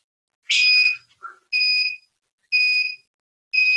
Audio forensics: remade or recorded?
recorded